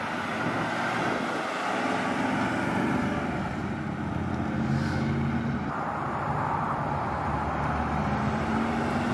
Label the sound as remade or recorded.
recorded